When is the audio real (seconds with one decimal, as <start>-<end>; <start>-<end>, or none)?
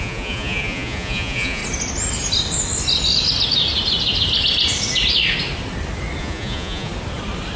1.6-6.2; 6.9-7.6